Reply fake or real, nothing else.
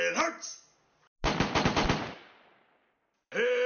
real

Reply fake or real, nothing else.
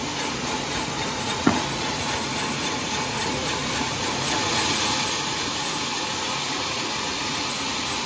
fake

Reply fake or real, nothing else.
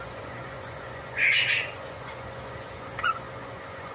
fake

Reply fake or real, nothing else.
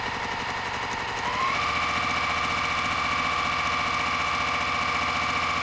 real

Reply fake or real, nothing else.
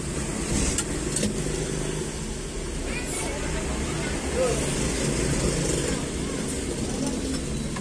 real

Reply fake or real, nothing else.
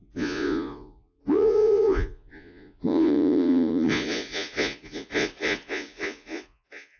fake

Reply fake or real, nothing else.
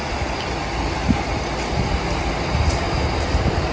real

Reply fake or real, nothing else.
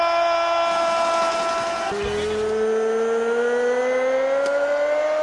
real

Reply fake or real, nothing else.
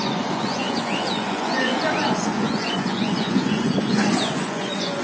fake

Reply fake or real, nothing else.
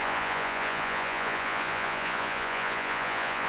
fake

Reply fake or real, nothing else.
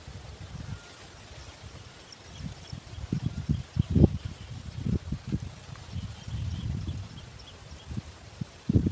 real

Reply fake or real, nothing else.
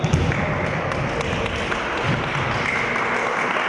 real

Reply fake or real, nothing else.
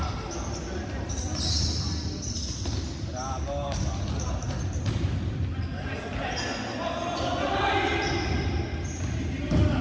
real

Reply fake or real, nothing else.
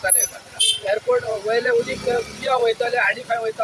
fake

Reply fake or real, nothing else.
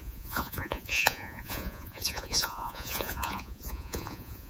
fake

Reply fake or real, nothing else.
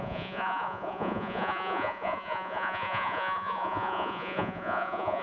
fake